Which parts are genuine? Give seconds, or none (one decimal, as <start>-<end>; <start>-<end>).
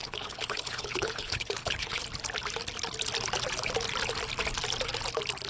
2.0-5.5